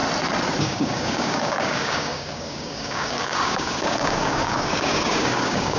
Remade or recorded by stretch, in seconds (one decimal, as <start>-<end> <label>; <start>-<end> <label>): 0.0-0.6 recorded; 0.6-5.8 remade